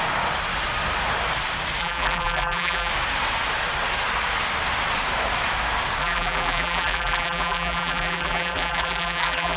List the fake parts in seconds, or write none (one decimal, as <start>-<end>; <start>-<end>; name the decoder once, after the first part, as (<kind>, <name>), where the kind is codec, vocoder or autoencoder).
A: 1.8-2.9 (vocoder, BigVGAN v2); 6.0-9.6